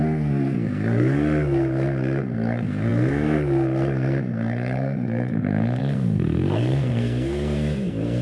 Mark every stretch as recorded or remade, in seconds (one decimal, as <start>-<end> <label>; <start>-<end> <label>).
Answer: 0.0-8.2 remade